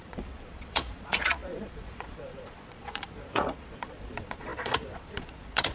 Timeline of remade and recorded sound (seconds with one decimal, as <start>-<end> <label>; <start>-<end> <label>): 0.0-5.7 remade